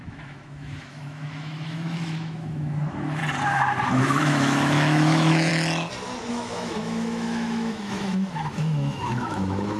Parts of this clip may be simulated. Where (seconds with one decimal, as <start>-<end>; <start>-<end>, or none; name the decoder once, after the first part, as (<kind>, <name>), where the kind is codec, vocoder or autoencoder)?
0.0-3.2 (autoencoder, DAC-VAE); 3.9-5.5; 6.3-9.8